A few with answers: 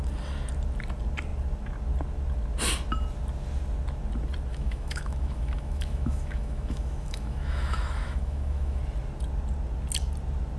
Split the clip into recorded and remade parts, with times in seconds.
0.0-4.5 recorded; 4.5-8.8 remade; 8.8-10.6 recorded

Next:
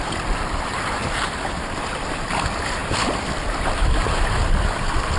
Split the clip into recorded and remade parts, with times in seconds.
0.0-5.2 recorded

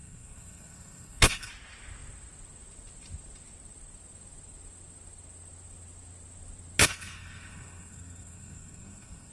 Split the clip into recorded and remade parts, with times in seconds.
0.0-1.5 remade; 1.5-6.8 recorded; 6.8-9.3 remade

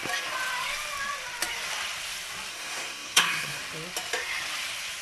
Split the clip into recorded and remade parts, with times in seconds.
0.0-2.5 recorded; 2.5-3.6 remade; 3.6-5.0 recorded

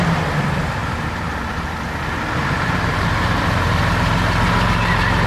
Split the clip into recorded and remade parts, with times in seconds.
0.0-0.8 recorded; 0.8-1.7 remade; 1.7-2.4 recorded; 2.4-3.4 remade; 3.4-5.3 recorded

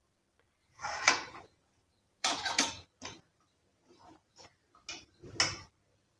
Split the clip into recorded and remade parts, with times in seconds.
0.0-0.6 recorded; 0.6-2.6 remade; 2.6-6.2 recorded

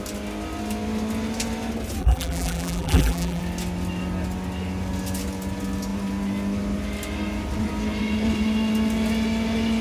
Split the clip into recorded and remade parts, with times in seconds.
0.0-2.0 recorded; 2.0-3.4 remade; 3.4-9.8 recorded

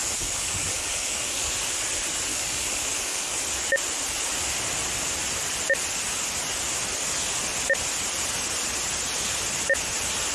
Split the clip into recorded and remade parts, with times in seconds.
0.0-1.5 remade; 1.5-2.3 recorded; 2.3-3.4 remade; 3.4-10.3 recorded